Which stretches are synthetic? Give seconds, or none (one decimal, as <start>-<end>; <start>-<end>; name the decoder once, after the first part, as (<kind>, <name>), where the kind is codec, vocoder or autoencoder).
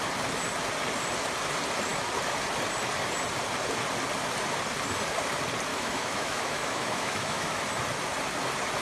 5.7-7.6 (autoencoder, DAC-VAE)